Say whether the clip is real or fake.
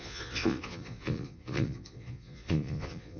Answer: fake